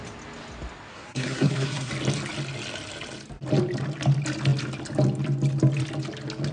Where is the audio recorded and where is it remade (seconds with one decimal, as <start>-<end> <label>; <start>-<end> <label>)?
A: 0.0-0.9 recorded; 0.9-1.9 remade; 1.9-6.5 recorded